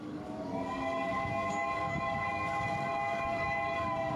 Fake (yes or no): yes